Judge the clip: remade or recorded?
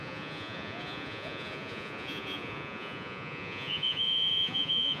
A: remade